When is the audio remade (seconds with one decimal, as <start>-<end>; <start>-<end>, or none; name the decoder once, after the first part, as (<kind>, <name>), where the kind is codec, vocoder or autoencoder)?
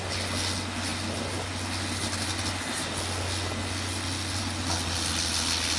none